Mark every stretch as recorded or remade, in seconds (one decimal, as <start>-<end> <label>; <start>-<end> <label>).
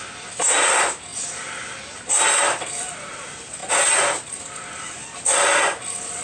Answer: 0.0-6.2 recorded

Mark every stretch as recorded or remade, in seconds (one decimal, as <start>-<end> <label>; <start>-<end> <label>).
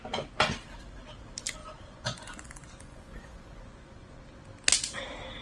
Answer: 0.0-1.6 recorded; 1.6-4.2 remade; 4.2-5.4 recorded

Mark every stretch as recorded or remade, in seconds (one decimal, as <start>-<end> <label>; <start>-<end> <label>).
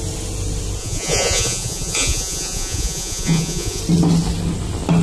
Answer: 0.0-0.8 recorded; 0.8-3.8 remade; 3.8-5.0 recorded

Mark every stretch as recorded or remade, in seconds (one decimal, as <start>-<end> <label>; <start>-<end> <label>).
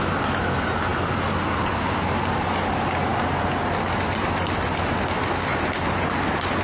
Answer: 0.0-6.6 recorded